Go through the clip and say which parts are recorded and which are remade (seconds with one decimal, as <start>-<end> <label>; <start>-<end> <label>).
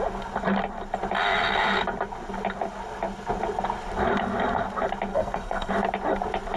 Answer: 0.0-5.1 recorded; 5.1-5.7 remade; 5.7-6.6 recorded